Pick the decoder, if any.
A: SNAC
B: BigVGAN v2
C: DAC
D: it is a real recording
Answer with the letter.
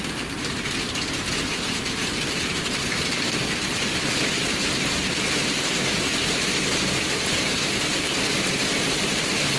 B